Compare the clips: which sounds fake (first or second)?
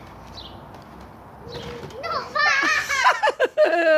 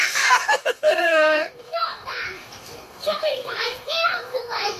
second